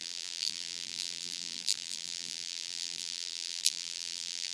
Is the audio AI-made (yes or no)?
yes